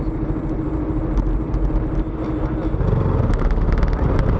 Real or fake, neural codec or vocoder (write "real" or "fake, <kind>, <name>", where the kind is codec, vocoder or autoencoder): real